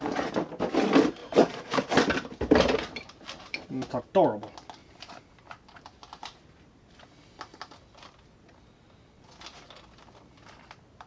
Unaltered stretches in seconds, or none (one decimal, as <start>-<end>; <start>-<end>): 0.0-1.2; 4.0-4.8; 5.3-6.2; 7.0-11.1